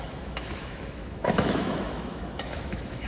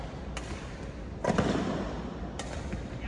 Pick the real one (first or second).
second